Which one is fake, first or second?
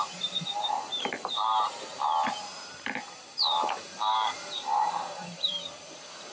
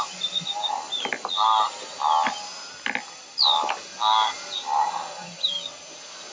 first